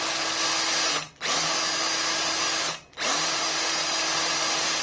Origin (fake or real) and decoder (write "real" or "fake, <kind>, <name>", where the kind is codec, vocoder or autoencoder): real